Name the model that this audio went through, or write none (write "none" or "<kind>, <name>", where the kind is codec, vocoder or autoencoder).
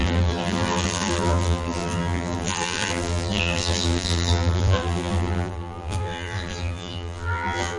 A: vocoder, BigVGAN v2